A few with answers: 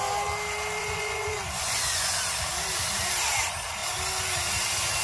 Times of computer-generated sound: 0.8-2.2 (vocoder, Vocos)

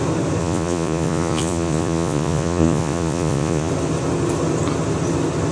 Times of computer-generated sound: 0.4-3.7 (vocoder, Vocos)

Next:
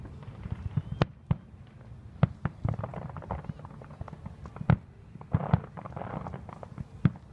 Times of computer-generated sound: none

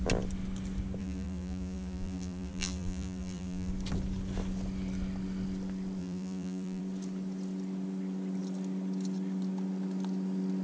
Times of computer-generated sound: 1.0-3.7 (vocoder, BigVGAN v2); 6.0-6.8

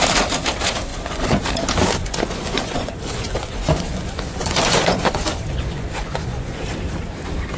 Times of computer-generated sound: 0.9-1.4 (vocoder, Vocos); 2.0-6.6

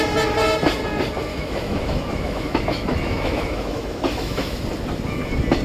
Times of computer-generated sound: 1.3-4.6 (autoencoder, DAC-VAE)